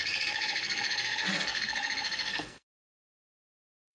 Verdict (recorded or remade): remade